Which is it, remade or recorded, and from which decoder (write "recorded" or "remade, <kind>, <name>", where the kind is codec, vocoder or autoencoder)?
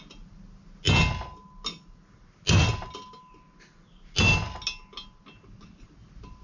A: recorded